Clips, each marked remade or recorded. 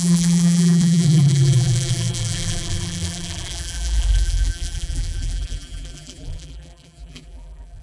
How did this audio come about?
remade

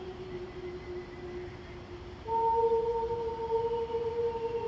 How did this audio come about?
recorded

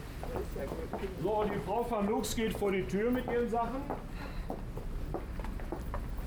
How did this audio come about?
recorded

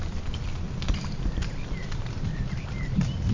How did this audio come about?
recorded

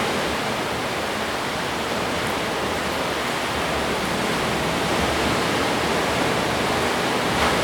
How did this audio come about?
recorded